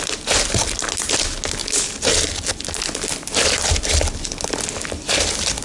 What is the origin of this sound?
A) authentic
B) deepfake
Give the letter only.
A